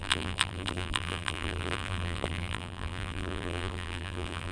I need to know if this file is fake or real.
fake